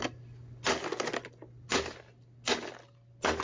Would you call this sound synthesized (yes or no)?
no